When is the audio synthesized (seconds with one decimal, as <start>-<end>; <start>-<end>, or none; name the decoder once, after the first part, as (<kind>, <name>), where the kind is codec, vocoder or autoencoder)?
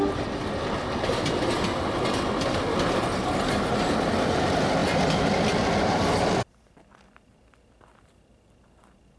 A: none